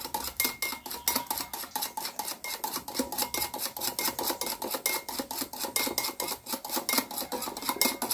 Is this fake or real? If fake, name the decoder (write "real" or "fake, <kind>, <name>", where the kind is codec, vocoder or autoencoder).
real